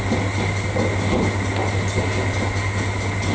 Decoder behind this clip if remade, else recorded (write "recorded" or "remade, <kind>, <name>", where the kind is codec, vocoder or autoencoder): recorded